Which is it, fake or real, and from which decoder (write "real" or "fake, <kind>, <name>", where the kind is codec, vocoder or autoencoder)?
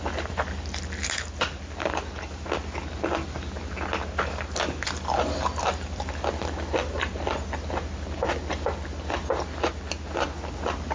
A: real